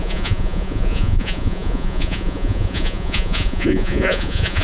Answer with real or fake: fake